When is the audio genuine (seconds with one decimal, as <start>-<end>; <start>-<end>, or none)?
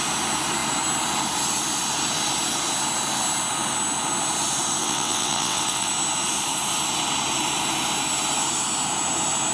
0.0-4.8; 5.9-9.5